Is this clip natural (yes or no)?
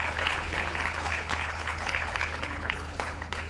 no